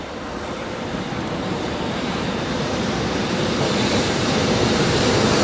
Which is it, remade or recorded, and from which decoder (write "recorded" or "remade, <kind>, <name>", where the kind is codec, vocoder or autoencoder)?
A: remade, vocoder, BigVGAN v2